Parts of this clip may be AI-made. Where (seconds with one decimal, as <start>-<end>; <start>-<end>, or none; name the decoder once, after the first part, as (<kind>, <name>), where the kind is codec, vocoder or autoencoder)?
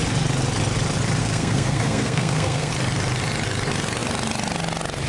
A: 1.2-2.7 (codec, SNAC)